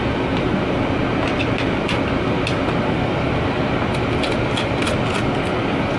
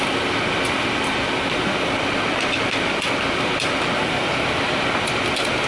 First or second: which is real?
first